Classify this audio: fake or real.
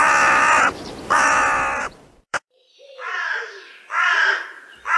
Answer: fake